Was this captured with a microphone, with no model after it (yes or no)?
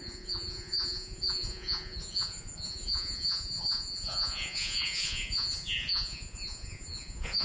no